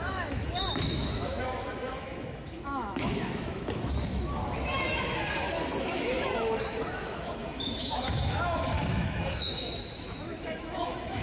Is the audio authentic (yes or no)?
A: no